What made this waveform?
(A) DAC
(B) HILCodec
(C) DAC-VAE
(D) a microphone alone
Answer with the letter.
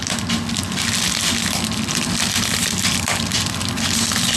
D